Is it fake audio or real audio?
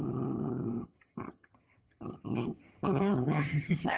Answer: fake